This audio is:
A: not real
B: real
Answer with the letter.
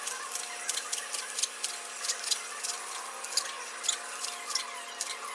B